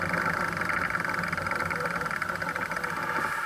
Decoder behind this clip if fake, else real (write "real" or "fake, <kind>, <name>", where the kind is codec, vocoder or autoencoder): real